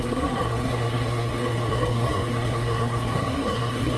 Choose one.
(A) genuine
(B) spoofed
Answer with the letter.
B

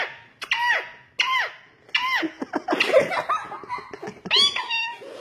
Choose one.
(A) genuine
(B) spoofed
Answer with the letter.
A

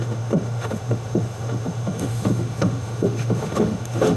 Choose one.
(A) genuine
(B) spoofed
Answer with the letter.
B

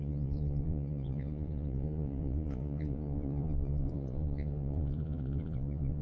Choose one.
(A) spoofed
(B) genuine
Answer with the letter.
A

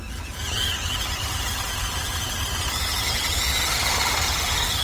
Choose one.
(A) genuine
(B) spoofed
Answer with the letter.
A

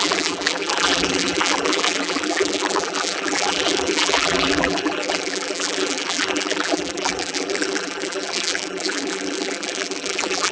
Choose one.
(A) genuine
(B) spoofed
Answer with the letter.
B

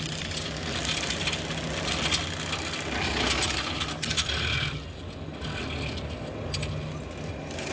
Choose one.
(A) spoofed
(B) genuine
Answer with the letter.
B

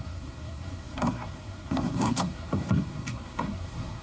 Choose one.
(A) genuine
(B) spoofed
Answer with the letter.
B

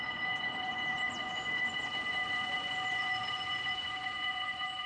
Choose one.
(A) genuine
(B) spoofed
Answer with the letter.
B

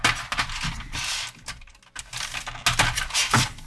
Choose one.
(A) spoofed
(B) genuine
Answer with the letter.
B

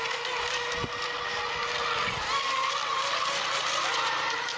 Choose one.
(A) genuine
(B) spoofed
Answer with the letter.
A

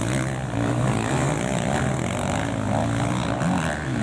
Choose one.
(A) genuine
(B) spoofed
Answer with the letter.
A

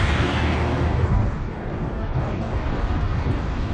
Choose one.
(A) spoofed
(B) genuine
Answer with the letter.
A